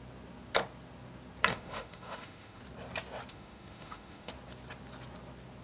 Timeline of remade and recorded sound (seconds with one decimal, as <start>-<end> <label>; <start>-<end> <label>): 0.0-1.5 recorded; 1.5-2.6 remade; 2.6-3.3 recorded; 3.3-4.3 remade; 4.3-5.6 recorded